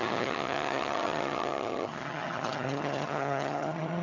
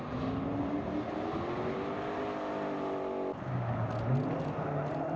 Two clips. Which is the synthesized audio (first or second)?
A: first